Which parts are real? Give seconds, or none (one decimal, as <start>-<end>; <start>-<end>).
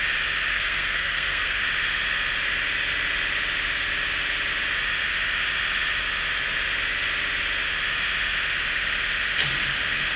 0.0-0.5; 1.6-10.2